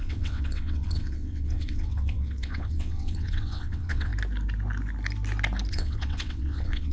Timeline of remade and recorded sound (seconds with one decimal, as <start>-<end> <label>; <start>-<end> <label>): 0.0-4.1 remade; 4.1-5.7 recorded; 5.7-6.9 remade